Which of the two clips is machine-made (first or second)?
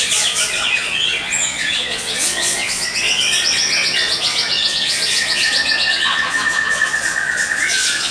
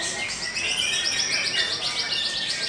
first